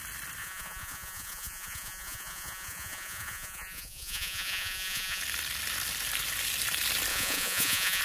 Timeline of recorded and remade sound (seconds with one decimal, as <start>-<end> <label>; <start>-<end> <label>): 0.0-0.4 recorded; 0.4-5.2 remade; 5.2-7.1 recorded; 7.1-8.0 remade